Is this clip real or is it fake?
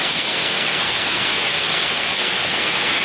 fake